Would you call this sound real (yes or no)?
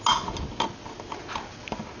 yes